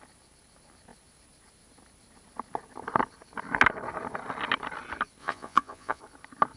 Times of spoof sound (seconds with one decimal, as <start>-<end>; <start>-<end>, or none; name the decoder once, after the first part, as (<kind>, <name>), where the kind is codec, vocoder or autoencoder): 5.2-6.0 (vocoder, Vocos)